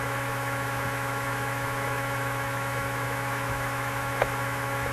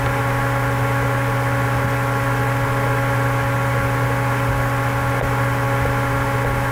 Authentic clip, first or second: second